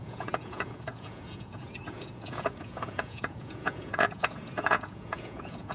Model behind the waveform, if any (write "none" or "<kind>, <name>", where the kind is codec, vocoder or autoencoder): vocoder, Vocos